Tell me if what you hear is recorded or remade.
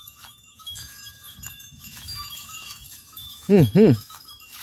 remade